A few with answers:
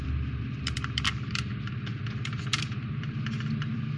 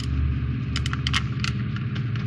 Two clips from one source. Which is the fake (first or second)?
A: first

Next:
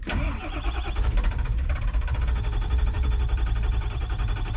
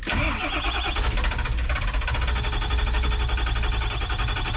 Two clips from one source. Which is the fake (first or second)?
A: first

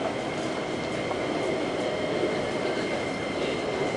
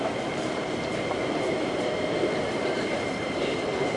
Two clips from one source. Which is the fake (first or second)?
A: second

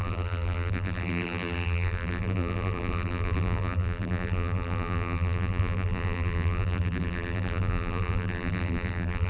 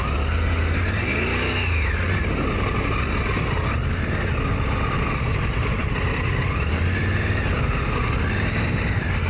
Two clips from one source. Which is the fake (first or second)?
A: first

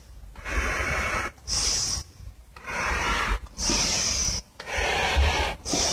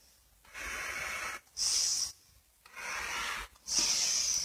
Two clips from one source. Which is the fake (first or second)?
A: first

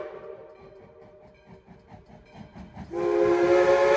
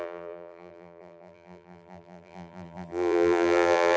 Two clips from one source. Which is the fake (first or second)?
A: second